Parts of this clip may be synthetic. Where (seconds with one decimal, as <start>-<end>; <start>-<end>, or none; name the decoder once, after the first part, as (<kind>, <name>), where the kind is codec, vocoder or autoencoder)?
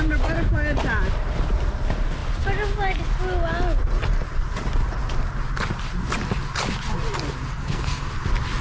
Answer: 7.5-8.1 (codec, SNAC)